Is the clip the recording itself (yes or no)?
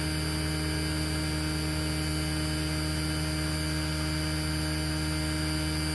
yes